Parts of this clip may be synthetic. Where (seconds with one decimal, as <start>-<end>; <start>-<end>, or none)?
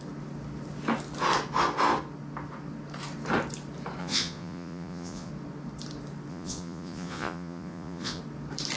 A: 4.0-5.3; 6.3-8.2